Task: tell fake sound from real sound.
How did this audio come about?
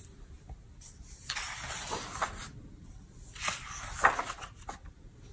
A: real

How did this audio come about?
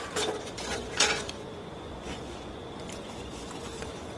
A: fake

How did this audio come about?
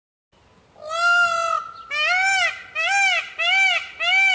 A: real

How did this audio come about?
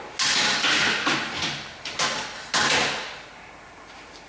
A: real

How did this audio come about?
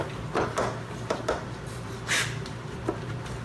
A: real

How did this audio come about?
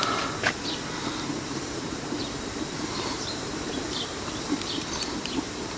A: fake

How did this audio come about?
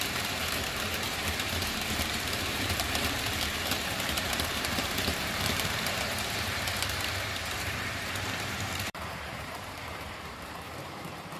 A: fake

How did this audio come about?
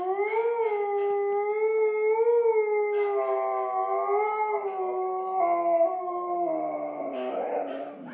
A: real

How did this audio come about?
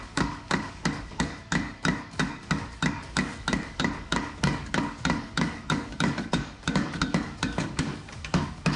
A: fake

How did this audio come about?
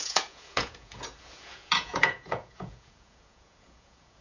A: fake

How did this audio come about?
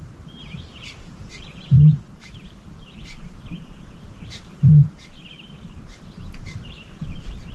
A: fake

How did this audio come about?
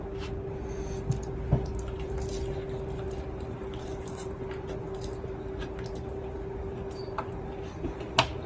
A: real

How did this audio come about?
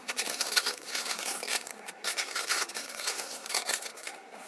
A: fake